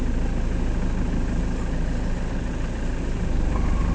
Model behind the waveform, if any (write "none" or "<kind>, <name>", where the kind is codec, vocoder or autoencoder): none